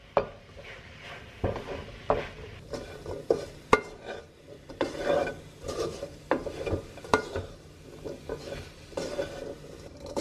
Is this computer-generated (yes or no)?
no